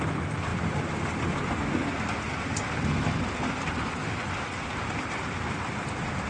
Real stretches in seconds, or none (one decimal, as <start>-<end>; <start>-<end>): 0.0-6.3